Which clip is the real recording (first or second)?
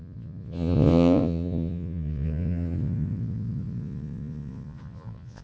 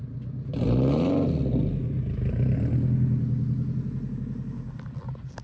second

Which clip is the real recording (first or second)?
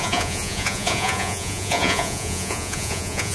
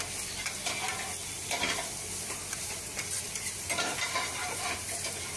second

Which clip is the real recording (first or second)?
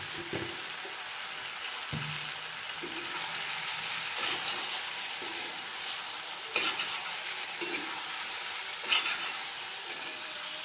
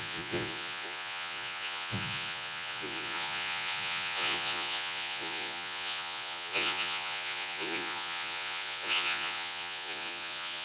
first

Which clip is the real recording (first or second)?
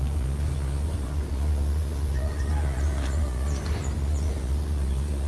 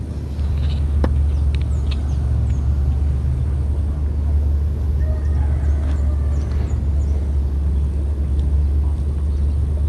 second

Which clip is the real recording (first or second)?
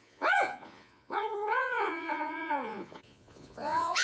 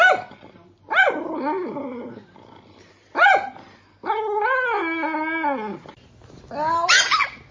second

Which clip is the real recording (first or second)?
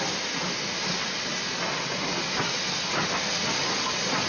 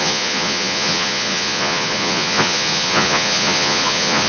first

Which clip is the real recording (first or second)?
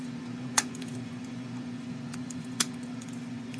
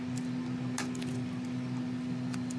second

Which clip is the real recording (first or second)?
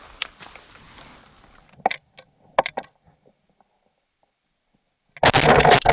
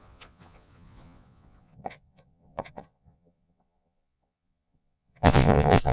first